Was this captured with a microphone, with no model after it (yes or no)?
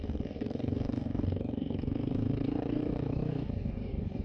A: no